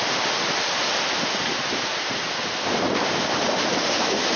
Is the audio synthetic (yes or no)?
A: no